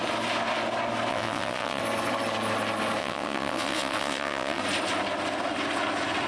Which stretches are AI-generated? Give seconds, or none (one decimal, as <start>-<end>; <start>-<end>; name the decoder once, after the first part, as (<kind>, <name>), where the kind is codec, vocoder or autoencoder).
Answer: 1.1-1.8 (vocoder, WaveNeXt); 3.0-4.6

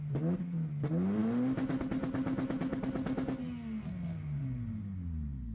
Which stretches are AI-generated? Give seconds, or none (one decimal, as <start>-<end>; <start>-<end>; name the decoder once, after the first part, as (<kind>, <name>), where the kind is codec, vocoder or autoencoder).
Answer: none

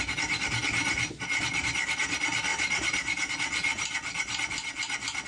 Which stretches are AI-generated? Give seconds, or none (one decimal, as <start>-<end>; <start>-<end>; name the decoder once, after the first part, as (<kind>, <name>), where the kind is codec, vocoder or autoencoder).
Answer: 0.8-1.4 (vocoder, BigVGAN v2); 2.5-3.3; 3.7-4.3